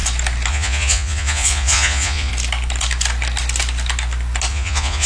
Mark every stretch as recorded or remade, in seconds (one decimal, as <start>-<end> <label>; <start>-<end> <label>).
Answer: 0.0-0.5 recorded; 0.5-2.3 remade; 2.3-4.5 recorded; 4.5-5.1 remade